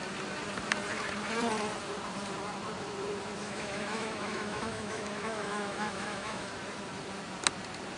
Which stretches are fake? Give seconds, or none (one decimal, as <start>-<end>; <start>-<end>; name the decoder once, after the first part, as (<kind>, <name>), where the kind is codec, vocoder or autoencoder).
3.4-6.5 (autoencoder, DAC-VAE)